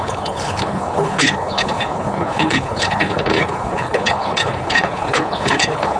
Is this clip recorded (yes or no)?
no